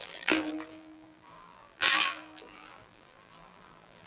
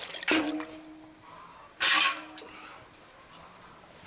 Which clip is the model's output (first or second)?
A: first